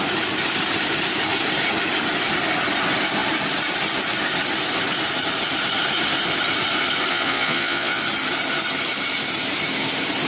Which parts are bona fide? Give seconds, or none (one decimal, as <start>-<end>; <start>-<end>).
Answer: 0.0-7.1; 8.0-10.3